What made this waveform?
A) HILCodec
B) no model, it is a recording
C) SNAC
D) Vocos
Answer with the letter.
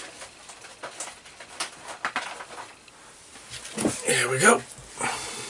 B